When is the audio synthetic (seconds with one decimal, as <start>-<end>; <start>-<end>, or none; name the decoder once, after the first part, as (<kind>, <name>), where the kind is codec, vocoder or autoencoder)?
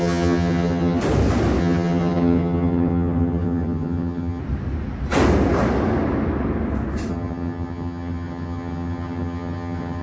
0.0-1.0 (vocoder, HiFi-GAN); 1.6-4.4; 7.1-10.0